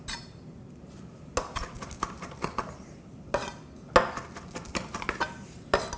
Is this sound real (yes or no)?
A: yes